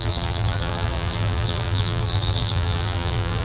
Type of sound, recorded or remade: remade